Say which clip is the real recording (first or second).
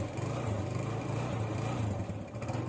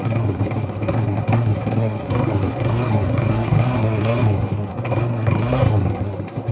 first